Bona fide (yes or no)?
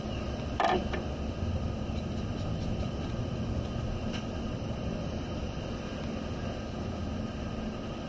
no